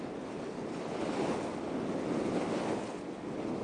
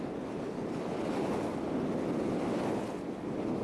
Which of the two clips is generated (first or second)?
first